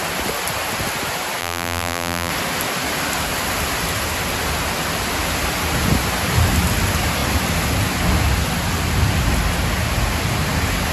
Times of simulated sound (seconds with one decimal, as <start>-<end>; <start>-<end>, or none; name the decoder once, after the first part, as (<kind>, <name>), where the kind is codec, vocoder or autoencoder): 1.4-2.3 (vocoder, BigVGAN v2)